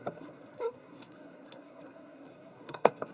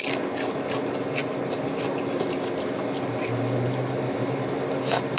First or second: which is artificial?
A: first